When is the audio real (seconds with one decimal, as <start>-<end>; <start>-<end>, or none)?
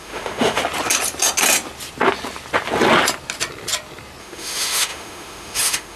0.6-4.2